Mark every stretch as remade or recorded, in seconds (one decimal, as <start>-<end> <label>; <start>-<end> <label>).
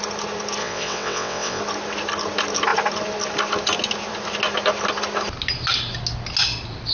0.0-0.6 recorded; 0.6-1.6 remade; 1.6-6.9 recorded